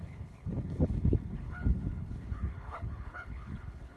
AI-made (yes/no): yes